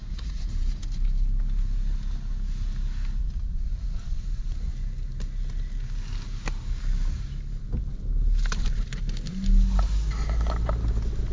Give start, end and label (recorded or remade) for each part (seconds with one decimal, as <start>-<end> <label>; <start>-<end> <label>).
0.0-0.5 remade; 0.5-3.2 recorded; 3.2-4.7 remade; 4.7-11.3 recorded